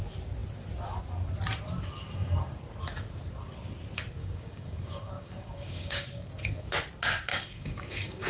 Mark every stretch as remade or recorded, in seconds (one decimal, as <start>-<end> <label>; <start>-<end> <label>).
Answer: 0.0-4.2 recorded; 4.2-6.3 remade; 6.3-7.3 recorded; 7.3-8.3 remade